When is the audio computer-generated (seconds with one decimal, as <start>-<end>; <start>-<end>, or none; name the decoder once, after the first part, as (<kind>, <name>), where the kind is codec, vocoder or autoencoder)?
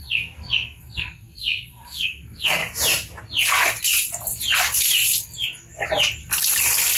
0.0-2.6 (codec, SNAC)